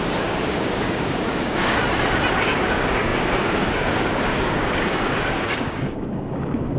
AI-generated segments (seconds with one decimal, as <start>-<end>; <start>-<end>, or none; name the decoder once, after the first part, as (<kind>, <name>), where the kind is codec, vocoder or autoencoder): 0.0-1.8 (codec, DAC); 2.4-6.8